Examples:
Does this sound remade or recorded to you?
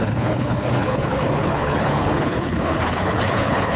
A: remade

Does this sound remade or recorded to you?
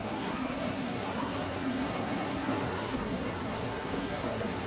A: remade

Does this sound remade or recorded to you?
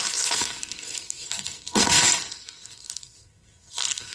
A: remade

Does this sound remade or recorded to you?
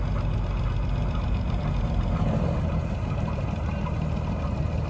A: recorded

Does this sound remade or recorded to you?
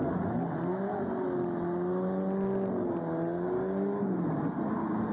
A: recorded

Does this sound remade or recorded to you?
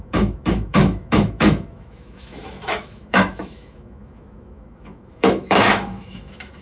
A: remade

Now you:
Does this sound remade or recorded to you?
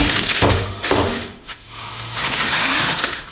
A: remade